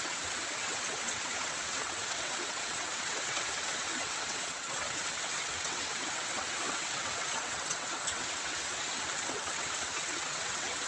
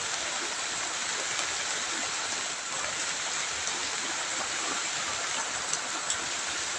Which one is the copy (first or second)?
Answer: first